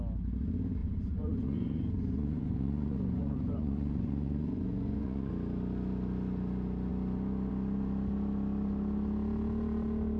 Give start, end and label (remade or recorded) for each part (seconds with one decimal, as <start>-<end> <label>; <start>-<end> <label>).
0.0-0.8 recorded; 0.8-5.3 remade; 5.3-10.2 recorded